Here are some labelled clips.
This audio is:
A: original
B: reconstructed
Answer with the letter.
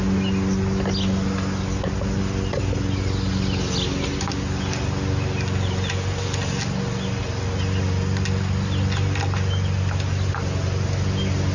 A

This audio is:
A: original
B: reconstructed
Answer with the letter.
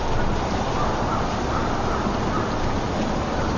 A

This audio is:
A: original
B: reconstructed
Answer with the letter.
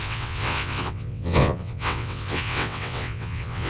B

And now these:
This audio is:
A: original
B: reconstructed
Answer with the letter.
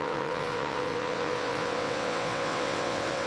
B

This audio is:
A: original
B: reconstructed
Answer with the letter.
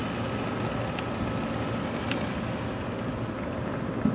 A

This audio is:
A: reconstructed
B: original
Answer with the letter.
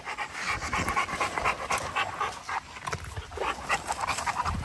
B